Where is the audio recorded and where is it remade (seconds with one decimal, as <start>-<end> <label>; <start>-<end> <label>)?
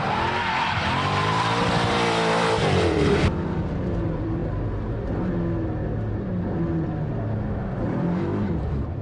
0.0-4.4 remade; 4.4-7.5 recorded; 7.5-9.0 remade